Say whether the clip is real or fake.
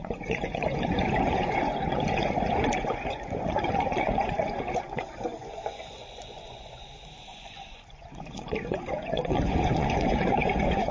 fake